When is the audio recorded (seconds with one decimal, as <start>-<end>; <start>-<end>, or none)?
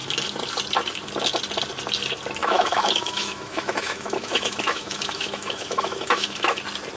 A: 0.0-2.4; 6.6-7.0